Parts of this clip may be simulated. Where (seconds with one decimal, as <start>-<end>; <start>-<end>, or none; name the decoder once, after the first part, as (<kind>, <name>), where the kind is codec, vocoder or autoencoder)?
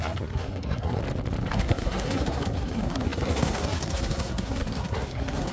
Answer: 0.0-1.0 (codec, SNAC); 1.5-5.5